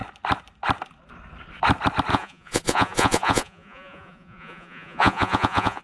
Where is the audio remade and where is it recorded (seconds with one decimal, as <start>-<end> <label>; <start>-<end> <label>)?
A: 0.0-2.1 recorded; 2.1-5.8 remade